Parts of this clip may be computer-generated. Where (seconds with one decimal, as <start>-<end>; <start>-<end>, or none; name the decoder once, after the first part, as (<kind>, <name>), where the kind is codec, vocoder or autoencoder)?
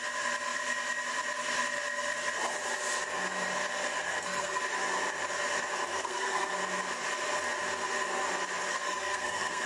4.0-4.6 (codec, SNAC); 5.9-6.5; 8.7-9.7